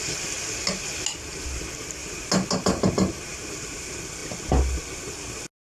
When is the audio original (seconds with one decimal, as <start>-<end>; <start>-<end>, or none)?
0.0-5.8